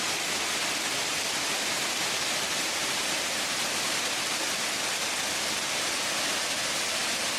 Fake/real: real